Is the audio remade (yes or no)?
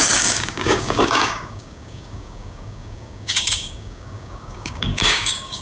yes